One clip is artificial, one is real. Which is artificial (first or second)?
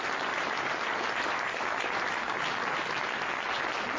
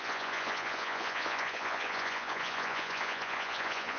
second